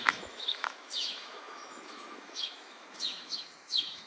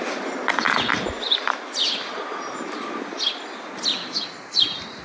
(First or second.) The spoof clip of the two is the first